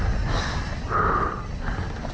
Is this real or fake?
real